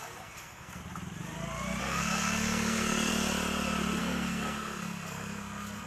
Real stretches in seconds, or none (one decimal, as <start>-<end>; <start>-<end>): 0.8-1.8; 3.1-4.0

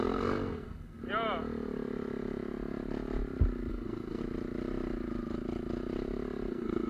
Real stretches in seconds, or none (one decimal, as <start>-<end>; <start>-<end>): 1.0-3.7; 4.2-6.5

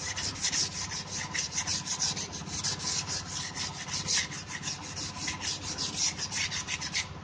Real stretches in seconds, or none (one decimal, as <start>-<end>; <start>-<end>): 0.0-7.2

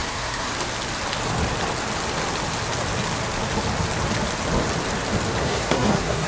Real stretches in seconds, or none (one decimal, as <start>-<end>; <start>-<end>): 0.5-5.4